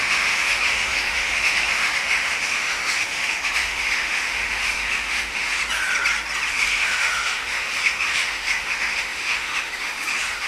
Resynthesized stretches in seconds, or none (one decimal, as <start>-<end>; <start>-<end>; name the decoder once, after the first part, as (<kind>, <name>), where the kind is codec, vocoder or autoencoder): 0.0-5.6 (autoencoder, DAC-VAE); 6.5-10.5